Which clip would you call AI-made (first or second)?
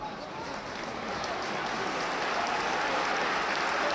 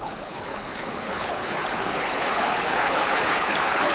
second